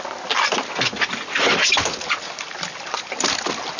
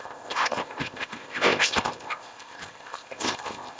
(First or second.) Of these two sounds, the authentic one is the first